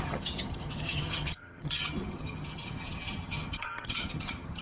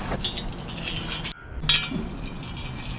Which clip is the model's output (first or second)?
first